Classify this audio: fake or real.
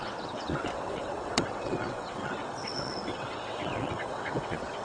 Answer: fake